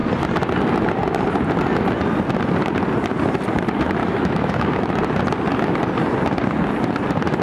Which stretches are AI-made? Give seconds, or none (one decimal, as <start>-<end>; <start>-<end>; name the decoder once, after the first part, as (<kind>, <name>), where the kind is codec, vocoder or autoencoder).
4.0-4.9 (autoencoder, DAC-VAE)